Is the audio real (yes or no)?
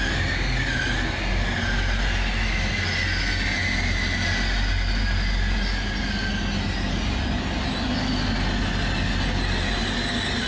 yes